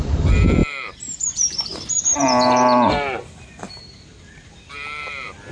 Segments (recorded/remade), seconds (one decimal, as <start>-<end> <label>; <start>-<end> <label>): 0.0-5.5 remade